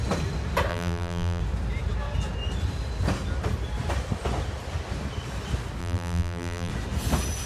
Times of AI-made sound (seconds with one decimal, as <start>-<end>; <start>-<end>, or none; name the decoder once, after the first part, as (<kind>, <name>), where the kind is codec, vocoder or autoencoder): 0.7-1.4 (vocoder, BigVGAN v2); 5.8-6.7